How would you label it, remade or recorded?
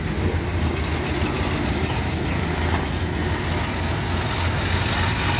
recorded